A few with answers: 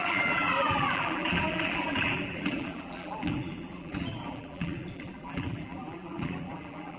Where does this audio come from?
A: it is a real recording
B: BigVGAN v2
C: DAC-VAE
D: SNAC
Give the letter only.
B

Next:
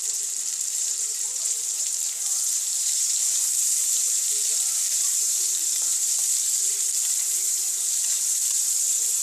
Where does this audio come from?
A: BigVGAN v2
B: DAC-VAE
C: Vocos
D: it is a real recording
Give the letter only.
A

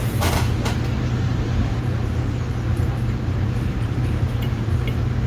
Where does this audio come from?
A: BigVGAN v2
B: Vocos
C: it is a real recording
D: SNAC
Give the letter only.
A